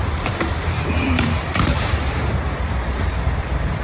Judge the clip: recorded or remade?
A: remade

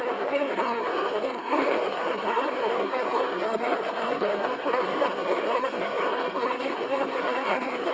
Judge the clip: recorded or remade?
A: remade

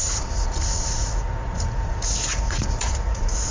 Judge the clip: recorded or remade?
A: remade